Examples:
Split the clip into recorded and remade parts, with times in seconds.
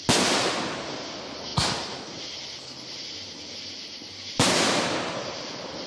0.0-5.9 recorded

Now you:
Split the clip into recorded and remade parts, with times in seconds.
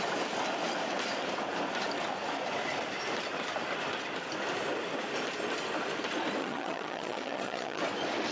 0.0-6.4 recorded; 6.4-7.8 remade; 7.8-8.3 recorded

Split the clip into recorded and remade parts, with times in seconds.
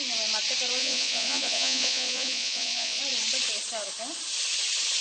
0.0-0.8 recorded; 0.8-3.0 remade; 3.0-5.0 recorded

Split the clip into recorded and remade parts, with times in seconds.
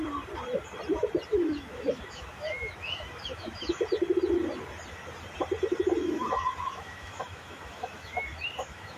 0.0-1.3 recorded; 1.3-3.8 remade; 3.8-6.0 recorded; 6.0-9.0 remade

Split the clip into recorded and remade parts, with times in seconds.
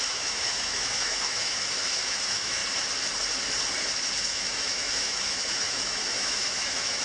0.0-2.6 remade; 2.6-4.2 recorded; 4.2-7.0 remade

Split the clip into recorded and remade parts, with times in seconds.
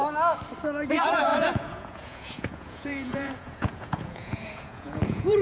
0.0-0.9 recorded; 0.9-5.4 remade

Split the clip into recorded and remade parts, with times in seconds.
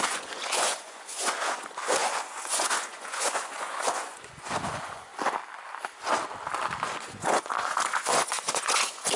0.0-5.1 remade; 5.1-6.8 recorded; 6.8-9.2 remade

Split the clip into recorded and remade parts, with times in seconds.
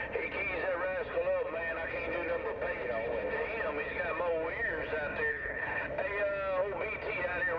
0.0-5.3 recorded; 5.3-5.8 remade; 5.8-7.6 recorded